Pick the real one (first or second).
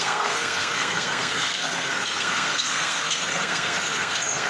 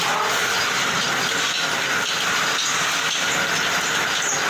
second